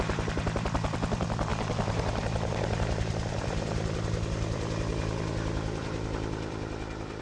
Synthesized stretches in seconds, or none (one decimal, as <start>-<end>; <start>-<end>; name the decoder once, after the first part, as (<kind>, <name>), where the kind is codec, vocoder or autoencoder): 0.0-7.2 (vocoder, BigVGAN v2)